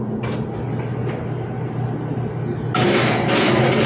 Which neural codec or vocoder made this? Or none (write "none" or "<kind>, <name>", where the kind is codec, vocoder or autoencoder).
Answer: none